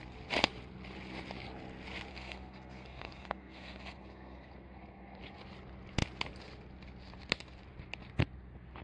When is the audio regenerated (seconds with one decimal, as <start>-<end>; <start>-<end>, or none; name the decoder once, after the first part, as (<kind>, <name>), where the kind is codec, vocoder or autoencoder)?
2.1-5.2 (codec, SNAC)